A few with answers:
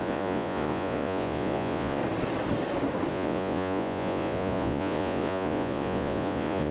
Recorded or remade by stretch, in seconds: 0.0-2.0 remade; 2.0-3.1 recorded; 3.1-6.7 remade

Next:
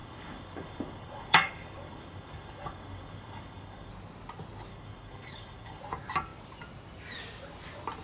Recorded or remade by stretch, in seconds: 0.0-3.9 remade; 3.9-4.7 recorded; 4.7-5.8 remade; 5.8-8.0 recorded

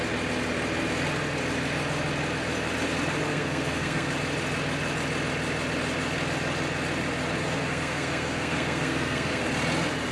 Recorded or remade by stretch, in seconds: 0.0-3.3 recorded; 3.3-4.1 remade; 4.1-7.4 recorded; 7.4-9.4 remade; 9.4-10.1 recorded

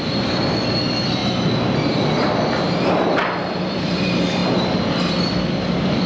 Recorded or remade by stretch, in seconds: 0.0-1.2 remade; 1.2-1.9 recorded; 1.9-6.1 remade

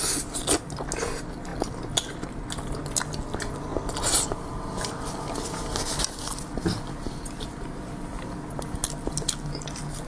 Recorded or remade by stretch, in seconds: 0.0-10.1 recorded